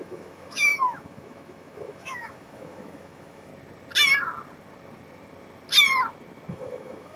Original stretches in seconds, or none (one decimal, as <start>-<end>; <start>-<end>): 3.5-6.5